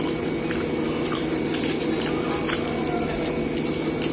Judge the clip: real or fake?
real